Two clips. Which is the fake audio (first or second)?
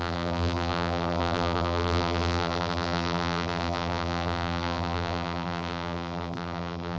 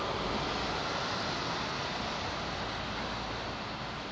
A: first